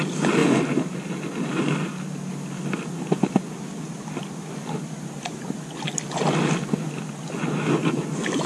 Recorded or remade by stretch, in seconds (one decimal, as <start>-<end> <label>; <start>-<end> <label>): 0.0-8.5 recorded